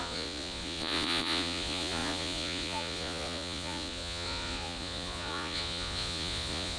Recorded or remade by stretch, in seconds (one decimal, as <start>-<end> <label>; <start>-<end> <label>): 0.0-6.8 remade